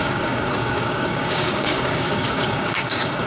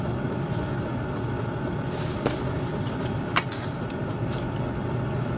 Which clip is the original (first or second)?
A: second